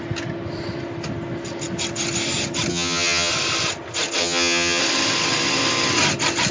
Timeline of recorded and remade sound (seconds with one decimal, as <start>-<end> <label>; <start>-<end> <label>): 0.0-2.7 recorded; 2.7-3.3 remade; 3.3-4.2 recorded; 4.2-4.8 remade; 4.8-6.5 recorded